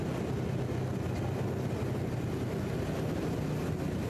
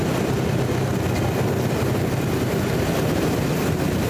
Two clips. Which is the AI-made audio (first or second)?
second